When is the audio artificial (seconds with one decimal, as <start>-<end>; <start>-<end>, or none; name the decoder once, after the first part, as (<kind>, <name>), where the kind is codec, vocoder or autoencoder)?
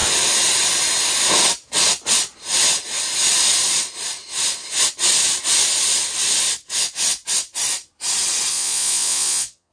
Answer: 8.5-9.7 (vocoder, Vocos)